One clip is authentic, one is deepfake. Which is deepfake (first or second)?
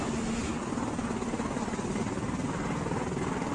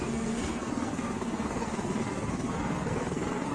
second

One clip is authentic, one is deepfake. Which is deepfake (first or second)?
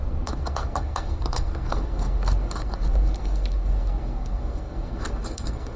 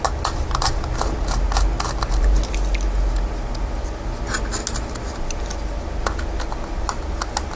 first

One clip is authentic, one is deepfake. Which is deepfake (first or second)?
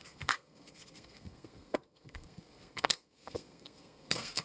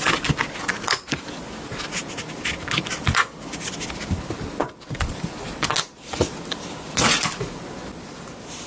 first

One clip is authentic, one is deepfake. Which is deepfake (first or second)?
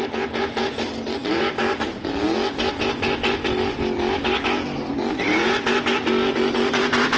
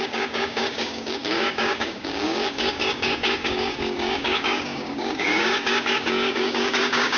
second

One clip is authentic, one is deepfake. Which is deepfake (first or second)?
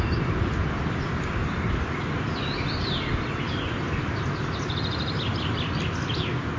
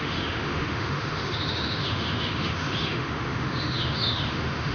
second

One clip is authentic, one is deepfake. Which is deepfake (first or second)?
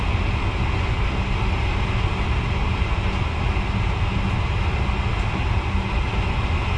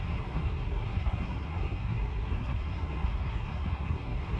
second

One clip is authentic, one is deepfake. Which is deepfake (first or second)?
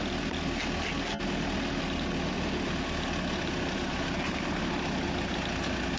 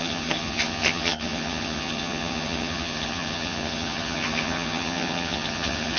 second